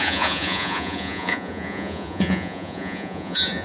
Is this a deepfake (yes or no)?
yes